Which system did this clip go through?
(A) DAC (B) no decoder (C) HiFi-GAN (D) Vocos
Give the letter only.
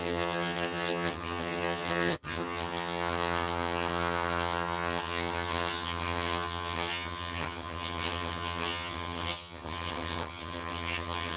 C